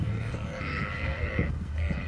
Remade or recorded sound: remade